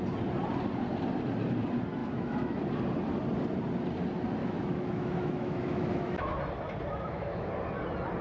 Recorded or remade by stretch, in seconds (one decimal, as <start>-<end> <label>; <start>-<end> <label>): 0.0-2.0 recorded; 2.0-2.6 remade; 2.6-4.4 recorded; 4.4-6.4 remade; 6.4-6.9 recorded; 6.9-7.5 remade; 7.5-8.2 recorded